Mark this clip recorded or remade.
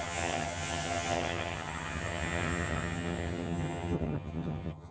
remade